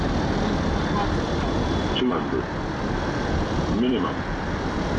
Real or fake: real